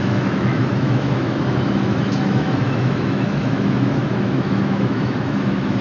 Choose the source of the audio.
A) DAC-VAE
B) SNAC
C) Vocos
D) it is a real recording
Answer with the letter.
A